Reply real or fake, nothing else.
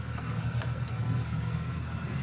fake